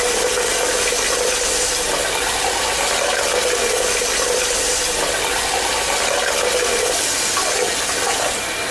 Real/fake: real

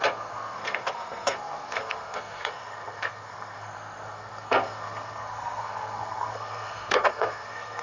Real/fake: fake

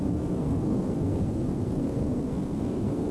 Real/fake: fake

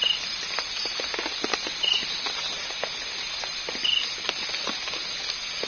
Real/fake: real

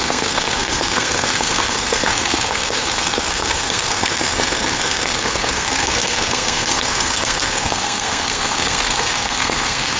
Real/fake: fake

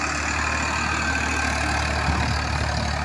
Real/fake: real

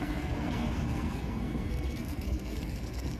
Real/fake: fake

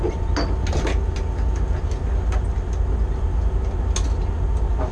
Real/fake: real